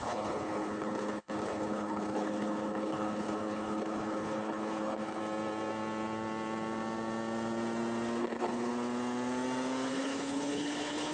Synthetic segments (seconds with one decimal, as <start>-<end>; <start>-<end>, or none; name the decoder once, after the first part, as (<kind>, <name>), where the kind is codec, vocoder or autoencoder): 0.0-5.2 (codec, HILCodec); 8.2-8.7; 9.9-11.1